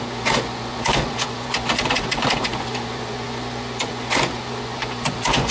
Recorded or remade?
remade